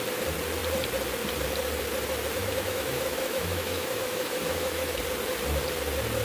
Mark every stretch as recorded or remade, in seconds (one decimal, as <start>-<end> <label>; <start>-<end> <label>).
0.0-2.4 recorded; 2.4-5.0 remade; 5.0-6.2 recorded